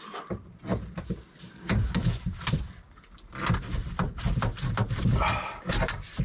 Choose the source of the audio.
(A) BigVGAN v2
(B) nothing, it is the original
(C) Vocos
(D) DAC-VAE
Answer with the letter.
A